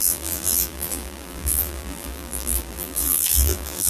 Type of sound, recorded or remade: remade